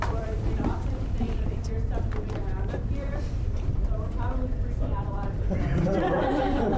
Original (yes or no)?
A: no